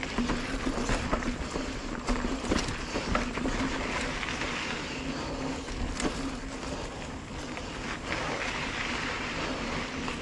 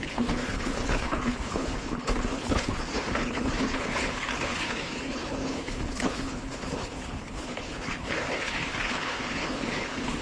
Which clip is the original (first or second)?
first